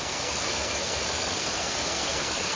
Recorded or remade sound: remade